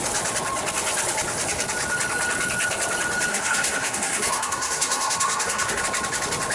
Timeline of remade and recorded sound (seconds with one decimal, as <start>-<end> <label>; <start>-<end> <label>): 0.0-3.3 recorded; 3.3-5.8 remade; 5.8-6.5 recorded